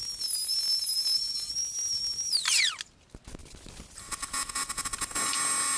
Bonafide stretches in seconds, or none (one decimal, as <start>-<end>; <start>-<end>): 0.0-5.8